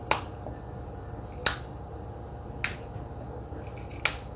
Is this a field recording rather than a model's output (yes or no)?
yes